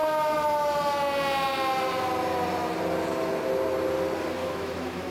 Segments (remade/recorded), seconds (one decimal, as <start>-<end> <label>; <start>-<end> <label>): 0.0-4.4 recorded; 4.4-5.1 remade